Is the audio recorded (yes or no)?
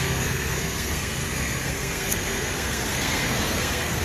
no